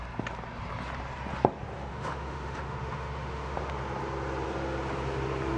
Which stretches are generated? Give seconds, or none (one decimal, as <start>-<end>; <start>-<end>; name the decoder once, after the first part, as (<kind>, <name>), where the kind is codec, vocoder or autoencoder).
1.9-3.7 (autoencoder, DAC-VAE)